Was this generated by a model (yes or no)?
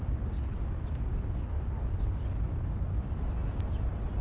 no